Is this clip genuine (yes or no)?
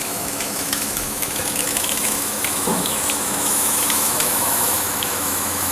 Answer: no